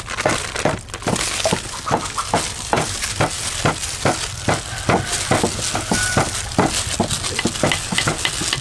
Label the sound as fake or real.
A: real